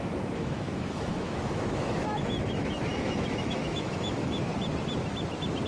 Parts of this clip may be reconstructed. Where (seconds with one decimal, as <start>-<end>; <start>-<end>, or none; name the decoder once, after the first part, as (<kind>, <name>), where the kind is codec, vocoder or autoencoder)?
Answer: 0.0-4.5 (autoencoder, DAC-VAE)